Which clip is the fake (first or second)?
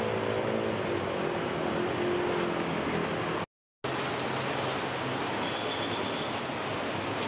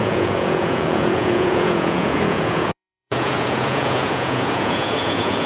second